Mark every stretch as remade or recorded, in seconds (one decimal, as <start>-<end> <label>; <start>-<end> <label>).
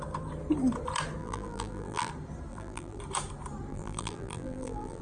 0.0-1.2 recorded; 1.2-2.1 remade; 2.1-2.5 recorded; 2.5-3.0 remade; 3.0-3.7 recorded; 3.7-5.0 remade